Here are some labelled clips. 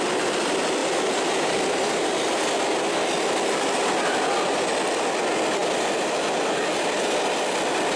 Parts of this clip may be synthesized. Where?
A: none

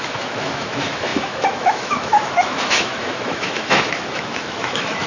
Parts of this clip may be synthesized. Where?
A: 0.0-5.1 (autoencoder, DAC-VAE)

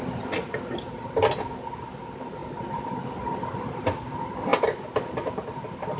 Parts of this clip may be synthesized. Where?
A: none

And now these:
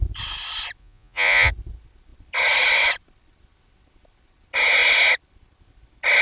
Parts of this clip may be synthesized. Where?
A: 0.8-1.5 (vocoder, Vocos)